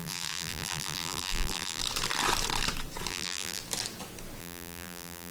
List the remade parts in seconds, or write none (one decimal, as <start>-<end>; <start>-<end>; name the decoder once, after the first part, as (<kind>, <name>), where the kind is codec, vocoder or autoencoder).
0.0-1.8 (vocoder, BigVGAN v2); 3.1-3.6; 4.4-5.3